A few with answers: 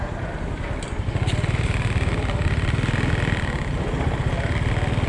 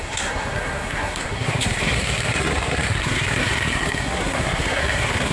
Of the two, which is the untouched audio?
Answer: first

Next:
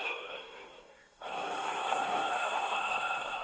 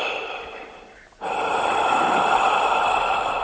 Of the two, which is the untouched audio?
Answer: second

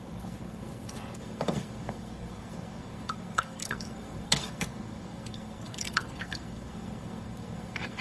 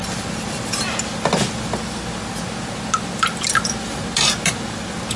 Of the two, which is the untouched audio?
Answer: second